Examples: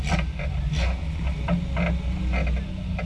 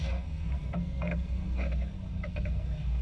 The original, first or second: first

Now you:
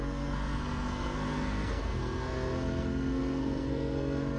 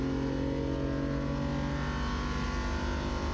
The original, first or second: second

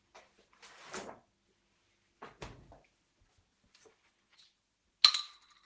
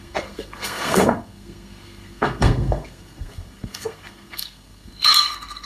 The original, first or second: first